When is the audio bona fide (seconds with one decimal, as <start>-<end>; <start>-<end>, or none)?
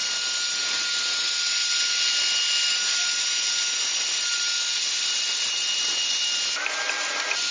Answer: 0.0-7.5